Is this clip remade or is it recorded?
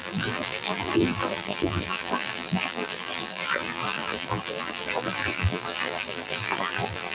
remade